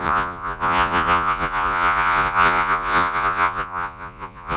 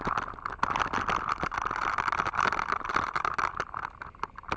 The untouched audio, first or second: second